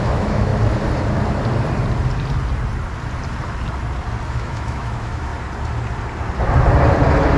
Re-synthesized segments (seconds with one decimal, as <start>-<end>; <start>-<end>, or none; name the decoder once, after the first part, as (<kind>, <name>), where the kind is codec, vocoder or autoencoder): 0.0-0.5 (autoencoder, DAC-VAE); 4.3-5.3